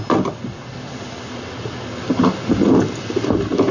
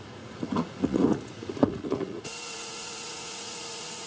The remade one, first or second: second